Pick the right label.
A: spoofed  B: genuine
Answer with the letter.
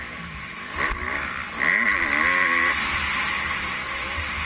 B